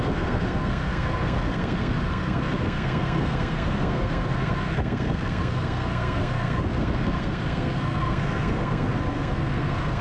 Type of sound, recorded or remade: remade